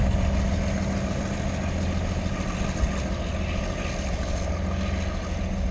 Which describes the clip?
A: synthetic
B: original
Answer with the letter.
B